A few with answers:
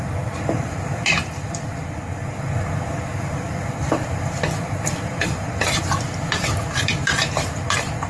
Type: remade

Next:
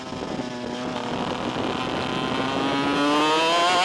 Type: recorded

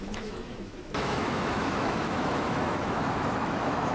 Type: remade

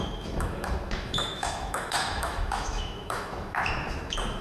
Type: remade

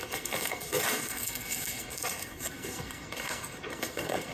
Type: remade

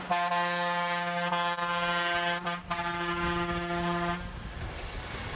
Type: recorded